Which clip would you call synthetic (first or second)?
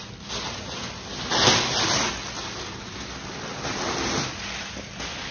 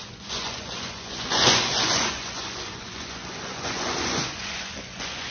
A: second